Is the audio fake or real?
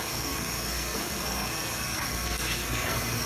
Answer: fake